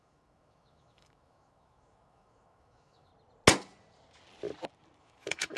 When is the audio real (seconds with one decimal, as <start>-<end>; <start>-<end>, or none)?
3.1-5.0

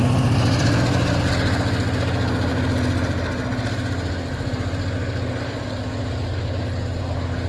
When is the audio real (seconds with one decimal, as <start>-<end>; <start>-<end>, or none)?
1.3-7.5

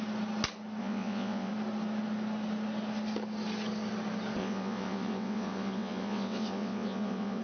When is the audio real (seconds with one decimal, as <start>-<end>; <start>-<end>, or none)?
0.0-0.8; 1.5-4.4

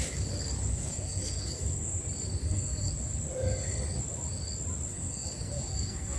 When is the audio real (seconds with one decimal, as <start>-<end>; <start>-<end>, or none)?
0.0-0.7; 2.0-2.4; 2.9-4.9

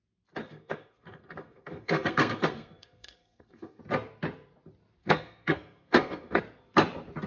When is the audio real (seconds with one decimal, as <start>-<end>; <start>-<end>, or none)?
0.0-0.4; 3.8-5.0; 6.4-7.3

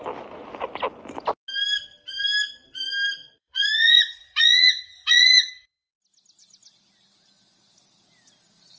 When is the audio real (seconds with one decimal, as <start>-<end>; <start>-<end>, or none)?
0.0-3.2; 5.9-8.8

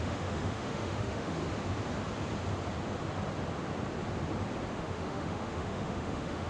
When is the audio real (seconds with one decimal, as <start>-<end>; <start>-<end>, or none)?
1.4-4.8